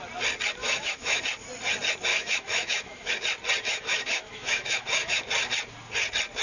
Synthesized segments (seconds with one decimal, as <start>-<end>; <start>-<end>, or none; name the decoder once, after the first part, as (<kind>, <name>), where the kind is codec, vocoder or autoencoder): 0.6-1.2 (autoencoder, DAC-VAE); 2.1-3.1; 3.7-5.2